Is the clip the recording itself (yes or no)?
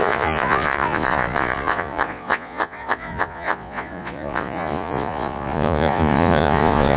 no